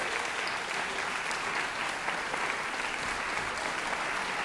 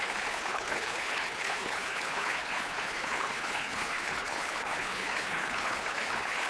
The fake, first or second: second